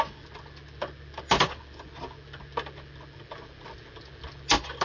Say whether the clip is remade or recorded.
recorded